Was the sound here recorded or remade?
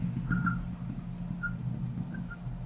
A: recorded